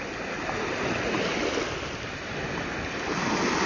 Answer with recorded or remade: recorded